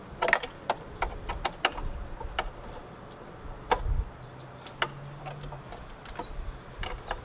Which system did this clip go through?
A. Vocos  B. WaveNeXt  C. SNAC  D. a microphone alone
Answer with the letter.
D